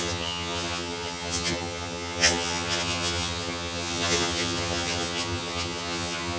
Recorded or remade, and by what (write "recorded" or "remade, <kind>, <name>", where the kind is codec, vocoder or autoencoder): remade, vocoder, HiFi-GAN